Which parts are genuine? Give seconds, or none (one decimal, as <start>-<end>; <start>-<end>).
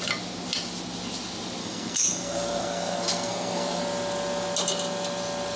0.0-1.6; 3.8-5.6